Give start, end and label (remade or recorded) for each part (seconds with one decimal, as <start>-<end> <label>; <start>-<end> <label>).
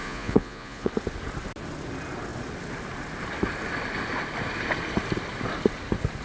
0.0-0.9 remade; 0.9-6.2 recorded